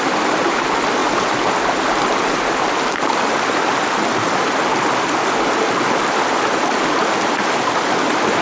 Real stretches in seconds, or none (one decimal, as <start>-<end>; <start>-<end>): 0.0-8.4